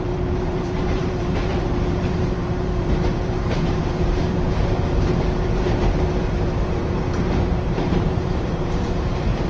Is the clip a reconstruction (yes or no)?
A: yes